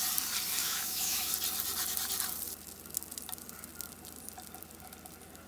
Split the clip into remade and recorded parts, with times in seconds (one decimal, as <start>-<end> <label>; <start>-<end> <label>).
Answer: 0.0-0.6 recorded; 0.6-1.3 remade; 1.3-5.5 recorded